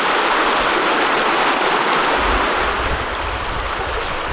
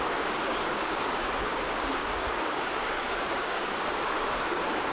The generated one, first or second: second